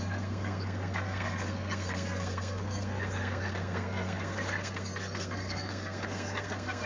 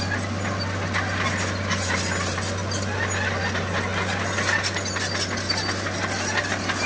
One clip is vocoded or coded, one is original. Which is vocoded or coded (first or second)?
first